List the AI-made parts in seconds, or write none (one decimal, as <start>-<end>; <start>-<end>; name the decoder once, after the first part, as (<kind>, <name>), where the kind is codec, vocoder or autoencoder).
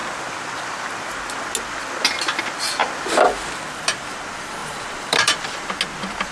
4.6-5.7 (vocoder, BigVGAN v2)